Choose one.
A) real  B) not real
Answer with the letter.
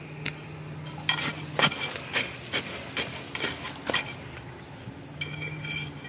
A